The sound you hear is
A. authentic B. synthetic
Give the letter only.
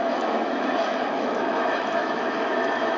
B